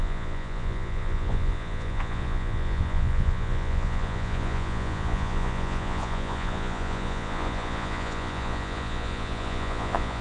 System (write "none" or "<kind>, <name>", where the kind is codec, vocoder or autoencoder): vocoder, Vocos